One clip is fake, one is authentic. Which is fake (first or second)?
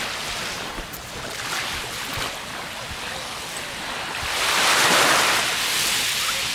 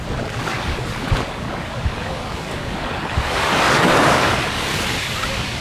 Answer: second